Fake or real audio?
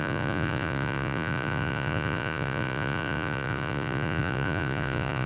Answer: fake